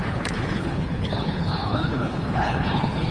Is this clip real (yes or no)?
no